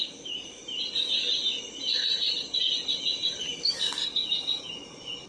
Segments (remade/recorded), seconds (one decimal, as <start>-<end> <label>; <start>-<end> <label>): 0.0-0.6 remade; 0.6-3.4 recorded; 3.4-4.0 remade; 4.0-5.3 recorded